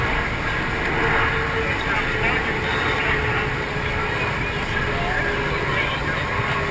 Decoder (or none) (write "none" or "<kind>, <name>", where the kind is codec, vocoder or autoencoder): none